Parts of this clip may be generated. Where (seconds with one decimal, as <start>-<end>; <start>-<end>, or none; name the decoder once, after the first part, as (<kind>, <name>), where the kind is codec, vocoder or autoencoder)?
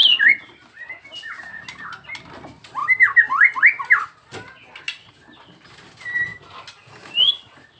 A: none